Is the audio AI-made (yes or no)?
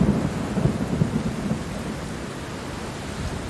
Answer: no